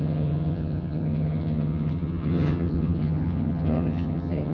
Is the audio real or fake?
fake